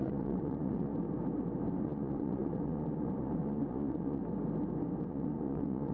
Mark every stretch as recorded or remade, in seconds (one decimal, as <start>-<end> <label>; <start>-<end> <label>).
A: 0.0-0.9 remade; 0.9-1.8 recorded; 1.8-4.2 remade; 4.2-5.0 recorded; 5.0-5.9 remade